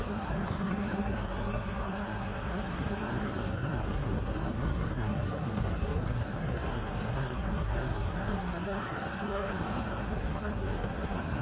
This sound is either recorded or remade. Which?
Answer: remade